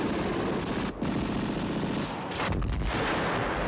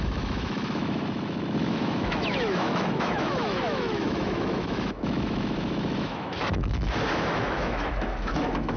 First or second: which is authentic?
first